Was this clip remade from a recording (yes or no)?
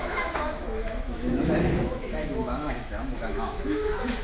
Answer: yes